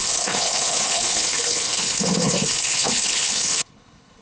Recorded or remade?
remade